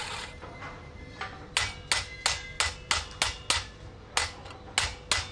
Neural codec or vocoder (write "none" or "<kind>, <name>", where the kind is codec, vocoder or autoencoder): none